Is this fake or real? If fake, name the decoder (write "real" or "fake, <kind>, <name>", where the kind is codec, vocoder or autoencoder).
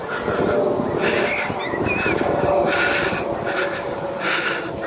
real